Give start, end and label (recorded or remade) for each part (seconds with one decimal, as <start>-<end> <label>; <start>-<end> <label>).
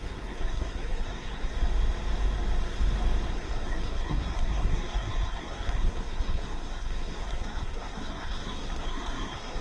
0.0-1.5 remade; 1.5-3.3 recorded; 3.3-9.6 remade